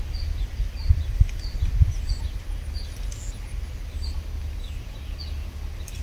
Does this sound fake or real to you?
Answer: real